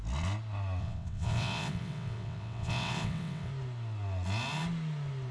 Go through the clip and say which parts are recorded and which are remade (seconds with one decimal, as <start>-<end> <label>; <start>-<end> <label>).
0.0-0.8 recorded; 0.8-3.5 remade; 3.5-5.3 recorded